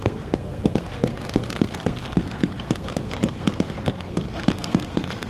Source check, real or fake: fake